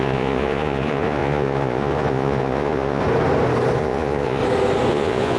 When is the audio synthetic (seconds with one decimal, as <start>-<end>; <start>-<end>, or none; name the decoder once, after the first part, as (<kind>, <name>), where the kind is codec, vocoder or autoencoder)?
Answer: 0.0-3.0 (vocoder, Vocos); 3.8-4.4; 4.9-5.4